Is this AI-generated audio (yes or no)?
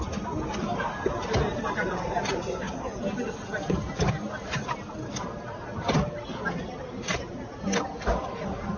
no